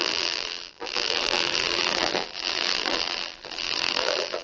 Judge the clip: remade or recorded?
remade